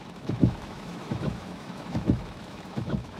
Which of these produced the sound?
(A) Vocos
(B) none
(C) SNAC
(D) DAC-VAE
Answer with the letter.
D